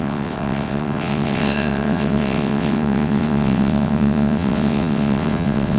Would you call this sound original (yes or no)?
no